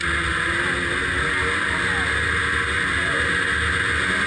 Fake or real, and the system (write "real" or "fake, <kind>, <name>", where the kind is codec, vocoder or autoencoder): real